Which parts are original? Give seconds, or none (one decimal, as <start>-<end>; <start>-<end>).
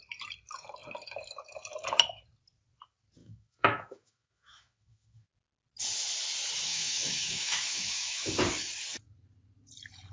0.0-3.2; 5.3-6.7; 8.3-10.1